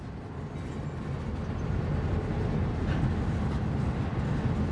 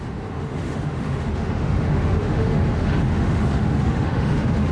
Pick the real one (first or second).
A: first